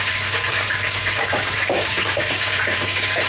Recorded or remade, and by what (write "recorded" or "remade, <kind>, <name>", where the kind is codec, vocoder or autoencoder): remade, codec, DAC